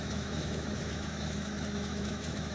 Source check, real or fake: fake